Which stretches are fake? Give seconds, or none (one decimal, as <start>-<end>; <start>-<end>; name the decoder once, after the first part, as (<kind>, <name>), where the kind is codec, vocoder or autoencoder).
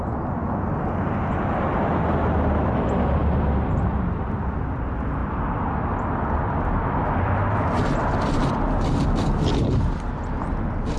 none